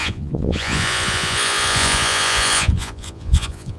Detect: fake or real fake